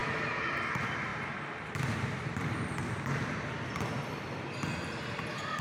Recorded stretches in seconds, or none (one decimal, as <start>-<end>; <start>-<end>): 0.5-1.1; 4.5-5.6